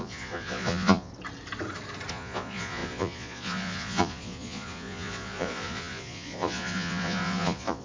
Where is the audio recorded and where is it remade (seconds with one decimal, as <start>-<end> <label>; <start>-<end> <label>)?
0.0-1.1 remade; 1.1-2.1 recorded; 2.1-7.8 remade